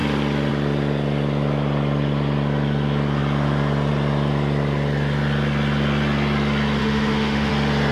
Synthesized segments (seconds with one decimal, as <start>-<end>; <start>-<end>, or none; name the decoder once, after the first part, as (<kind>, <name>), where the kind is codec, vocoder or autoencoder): 6.8-7.5 (autoencoder, DAC-VAE)